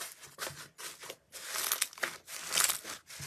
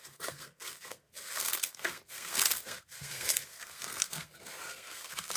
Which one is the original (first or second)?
first